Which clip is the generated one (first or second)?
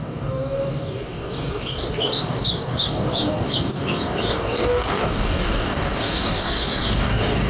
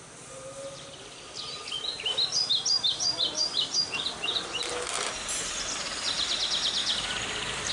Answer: first